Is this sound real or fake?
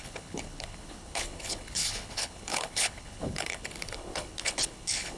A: fake